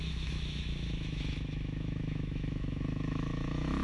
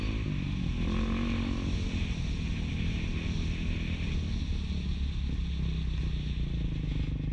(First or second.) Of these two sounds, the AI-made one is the first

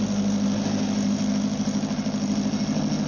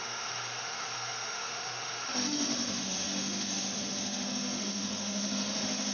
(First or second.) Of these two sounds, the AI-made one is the second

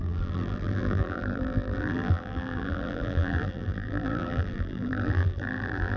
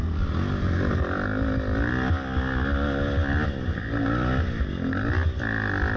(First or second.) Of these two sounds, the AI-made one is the first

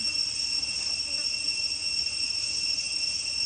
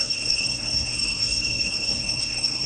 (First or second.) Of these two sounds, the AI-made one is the second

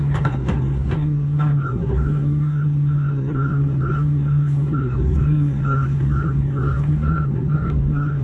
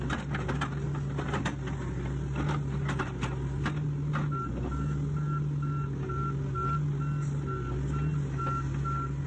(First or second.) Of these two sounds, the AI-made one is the first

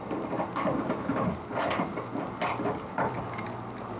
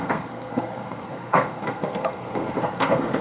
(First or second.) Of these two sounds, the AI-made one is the second